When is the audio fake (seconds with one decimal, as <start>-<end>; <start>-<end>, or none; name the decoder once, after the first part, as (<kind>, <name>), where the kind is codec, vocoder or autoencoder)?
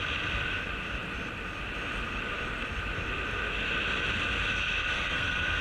4.8-5.6 (codec, SNAC)